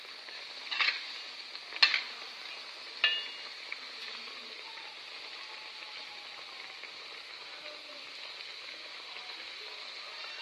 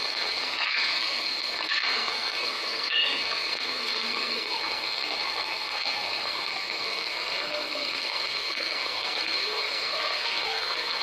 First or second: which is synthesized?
second